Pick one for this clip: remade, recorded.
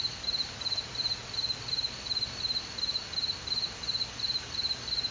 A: recorded